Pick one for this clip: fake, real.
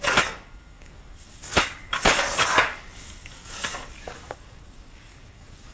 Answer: fake